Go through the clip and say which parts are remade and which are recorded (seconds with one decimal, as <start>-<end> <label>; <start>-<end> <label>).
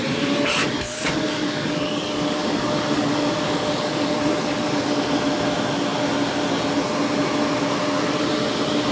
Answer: 0.0-0.6 recorded; 0.6-5.1 remade; 5.1-8.9 recorded